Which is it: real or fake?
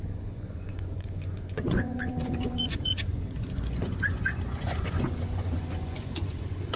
fake